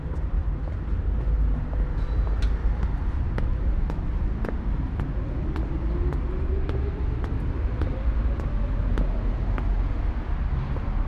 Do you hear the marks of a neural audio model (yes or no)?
no